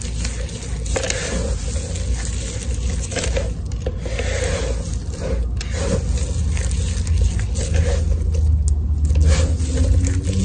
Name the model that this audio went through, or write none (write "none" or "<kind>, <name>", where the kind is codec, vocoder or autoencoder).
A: none